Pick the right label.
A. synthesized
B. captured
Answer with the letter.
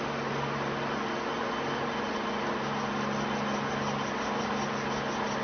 B